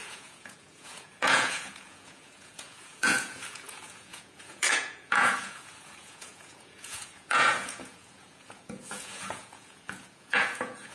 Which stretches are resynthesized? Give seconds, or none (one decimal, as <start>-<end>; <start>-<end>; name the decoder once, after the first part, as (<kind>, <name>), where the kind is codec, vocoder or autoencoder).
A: 0.0-10.9 (vocoder, Vocos)